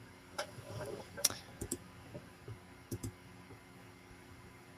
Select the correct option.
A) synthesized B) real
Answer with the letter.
A